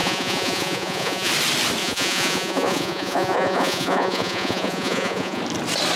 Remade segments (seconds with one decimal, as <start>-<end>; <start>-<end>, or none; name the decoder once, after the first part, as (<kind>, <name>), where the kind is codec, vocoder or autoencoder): 0.0-1.3 (vocoder, Vocos); 1.8-5.4